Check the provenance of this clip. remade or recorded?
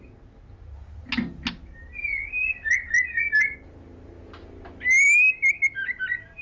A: recorded